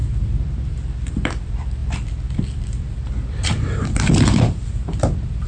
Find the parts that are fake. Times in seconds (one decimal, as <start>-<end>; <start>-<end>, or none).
0.0-5.5